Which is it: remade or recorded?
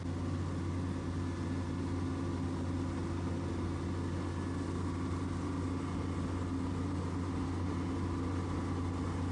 recorded